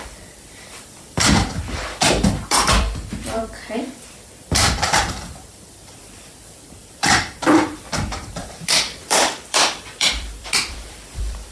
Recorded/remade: remade